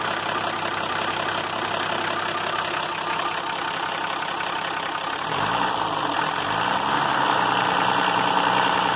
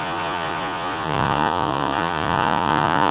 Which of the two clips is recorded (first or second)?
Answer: first